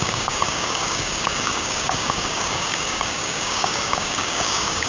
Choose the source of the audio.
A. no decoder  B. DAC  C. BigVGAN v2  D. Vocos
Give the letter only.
B